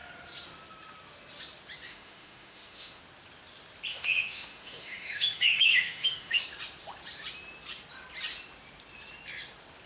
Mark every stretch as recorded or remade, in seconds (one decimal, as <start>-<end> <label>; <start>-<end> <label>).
0.0-1.9 recorded; 1.9-3.0 remade; 3.0-3.9 recorded; 3.9-6.4 remade; 6.4-9.9 recorded